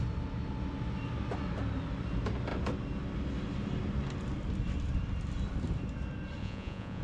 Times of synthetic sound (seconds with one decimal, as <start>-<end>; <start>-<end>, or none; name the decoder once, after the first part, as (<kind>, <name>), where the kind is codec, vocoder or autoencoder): 6.4-7.0 (vocoder, Vocos)